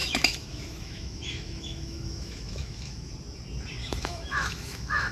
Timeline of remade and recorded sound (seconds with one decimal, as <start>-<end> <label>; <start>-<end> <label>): 0.0-3.1 remade; 3.1-3.8 recorded; 3.8-5.1 remade